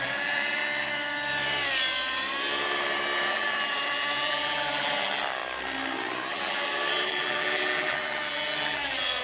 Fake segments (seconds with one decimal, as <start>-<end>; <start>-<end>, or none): 0.0-0.6; 3.3-5.4; 6.3-9.2